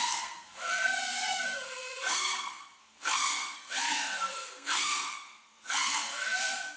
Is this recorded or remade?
remade